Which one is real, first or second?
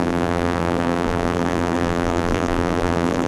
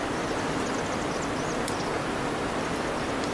second